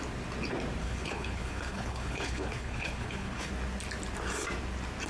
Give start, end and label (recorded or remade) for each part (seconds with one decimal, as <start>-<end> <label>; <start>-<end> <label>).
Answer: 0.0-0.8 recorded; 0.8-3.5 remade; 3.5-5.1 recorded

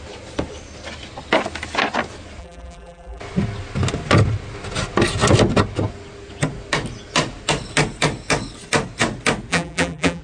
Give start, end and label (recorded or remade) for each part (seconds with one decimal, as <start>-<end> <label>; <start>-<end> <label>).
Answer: 0.0-2.4 recorded; 2.4-3.2 remade; 3.2-9.5 recorded; 9.5-10.2 remade

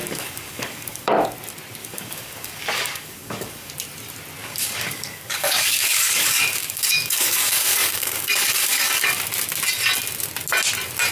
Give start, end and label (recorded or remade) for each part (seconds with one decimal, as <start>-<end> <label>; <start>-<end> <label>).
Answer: 0.0-1.1 remade; 1.1-1.8 recorded; 1.8-3.7 remade; 3.7-4.4 recorded; 4.4-9.2 remade; 9.2-11.1 recorded